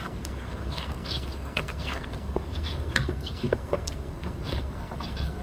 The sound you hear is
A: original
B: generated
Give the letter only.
B